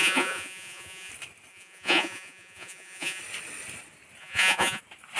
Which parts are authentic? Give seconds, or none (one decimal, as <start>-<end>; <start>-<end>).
1.1-1.5; 3.2-4.2; 4.8-5.2